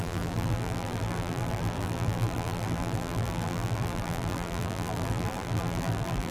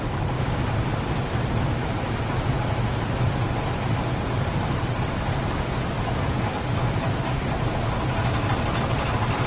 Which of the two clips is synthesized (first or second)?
first